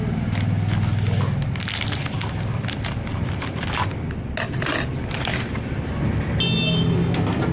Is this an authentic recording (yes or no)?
yes